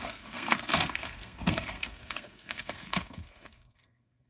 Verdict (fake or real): fake